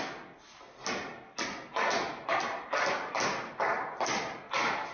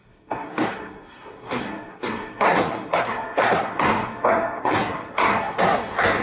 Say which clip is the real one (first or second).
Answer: first